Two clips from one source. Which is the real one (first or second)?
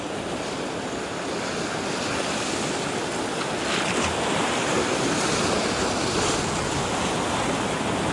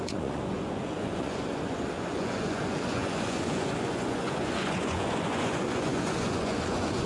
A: first